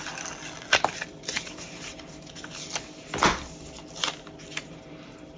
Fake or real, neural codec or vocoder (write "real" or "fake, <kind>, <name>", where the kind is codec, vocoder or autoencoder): real